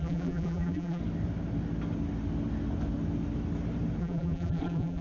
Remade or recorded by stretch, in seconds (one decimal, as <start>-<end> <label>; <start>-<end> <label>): 0.0-1.0 remade; 1.0-4.0 recorded; 4.0-5.0 remade